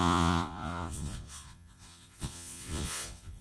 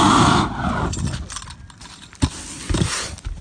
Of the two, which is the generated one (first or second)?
first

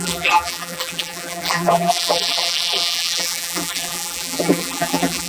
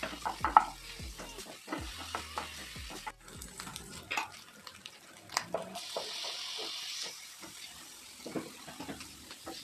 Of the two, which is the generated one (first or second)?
first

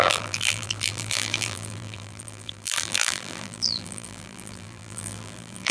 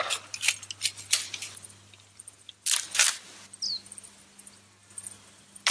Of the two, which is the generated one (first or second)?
first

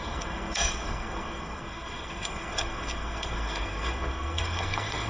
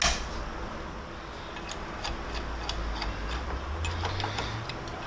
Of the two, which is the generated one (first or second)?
first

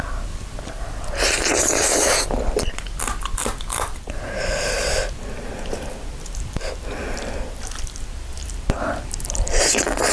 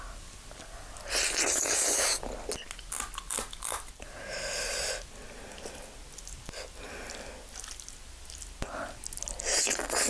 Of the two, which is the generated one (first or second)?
first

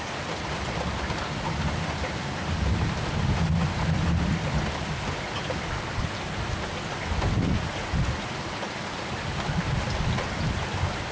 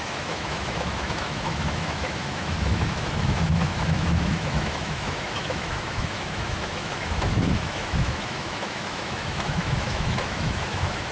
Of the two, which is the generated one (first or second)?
second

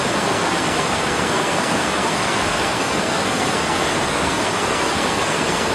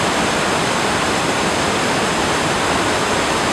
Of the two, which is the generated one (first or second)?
first